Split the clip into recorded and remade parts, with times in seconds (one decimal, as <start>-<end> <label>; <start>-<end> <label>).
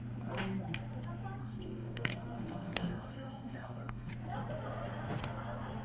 0.0-1.4 recorded; 1.4-4.1 remade; 4.1-5.8 recorded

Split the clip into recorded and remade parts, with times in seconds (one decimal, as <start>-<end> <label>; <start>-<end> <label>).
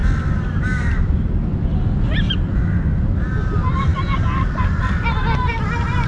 0.0-6.1 recorded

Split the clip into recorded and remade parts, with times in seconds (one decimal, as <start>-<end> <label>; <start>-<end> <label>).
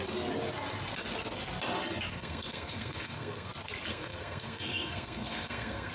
0.0-2.1 recorded; 2.1-3.5 remade; 3.5-3.9 recorded; 3.9-5.9 remade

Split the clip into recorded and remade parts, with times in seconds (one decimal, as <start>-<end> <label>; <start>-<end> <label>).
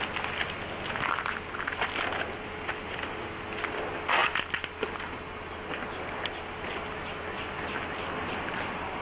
0.0-9.0 recorded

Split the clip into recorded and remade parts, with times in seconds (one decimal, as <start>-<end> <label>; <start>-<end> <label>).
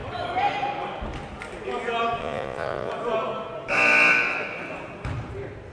0.0-2.2 recorded; 2.2-2.9 remade; 2.9-5.7 recorded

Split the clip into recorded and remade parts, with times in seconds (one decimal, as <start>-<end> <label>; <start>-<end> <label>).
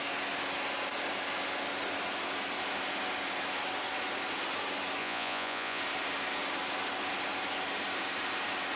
0.0-5.0 recorded; 5.0-5.8 remade; 5.8-8.8 recorded